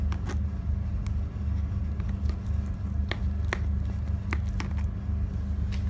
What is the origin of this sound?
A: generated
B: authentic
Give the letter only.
B